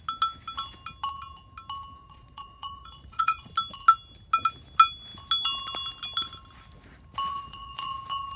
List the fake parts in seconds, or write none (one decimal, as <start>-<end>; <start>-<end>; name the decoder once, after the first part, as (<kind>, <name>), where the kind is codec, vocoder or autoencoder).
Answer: 2.0-3.5 (vocoder, Vocos); 7.3-7.9